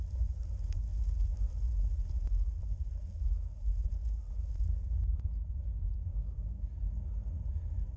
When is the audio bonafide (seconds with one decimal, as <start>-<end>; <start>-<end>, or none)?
0.0-6.1; 6.7-8.0